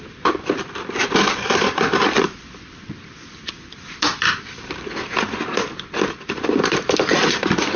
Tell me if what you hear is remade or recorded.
remade